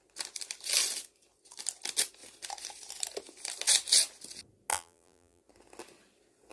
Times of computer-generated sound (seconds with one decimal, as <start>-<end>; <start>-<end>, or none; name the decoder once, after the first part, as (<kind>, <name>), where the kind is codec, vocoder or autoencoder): 4.7-5.4 (vocoder, BigVGAN v2)